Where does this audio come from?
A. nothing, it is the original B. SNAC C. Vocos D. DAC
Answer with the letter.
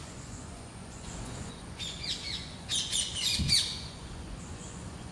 C